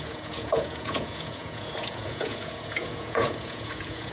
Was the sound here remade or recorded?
remade